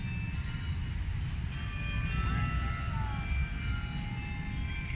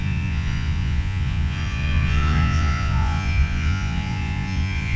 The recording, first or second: first